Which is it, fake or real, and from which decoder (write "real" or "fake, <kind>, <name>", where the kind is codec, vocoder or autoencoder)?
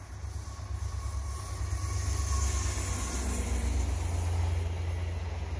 real